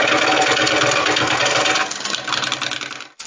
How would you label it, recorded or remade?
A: recorded